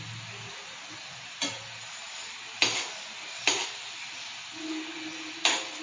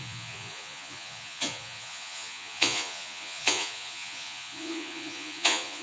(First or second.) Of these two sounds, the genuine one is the first